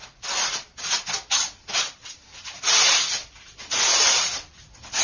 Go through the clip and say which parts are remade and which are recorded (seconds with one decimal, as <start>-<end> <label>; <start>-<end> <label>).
0.0-3.2 recorded; 3.2-4.6 remade; 4.6-5.0 recorded